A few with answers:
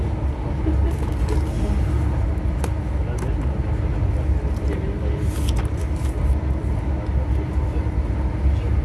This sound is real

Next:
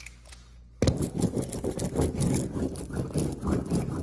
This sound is real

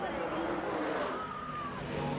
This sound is real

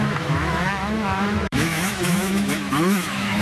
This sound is fake